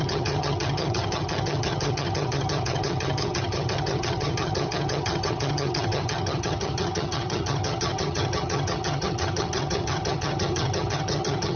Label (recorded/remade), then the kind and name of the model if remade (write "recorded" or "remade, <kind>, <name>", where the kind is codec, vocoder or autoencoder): remade, vocoder, HiFi-GAN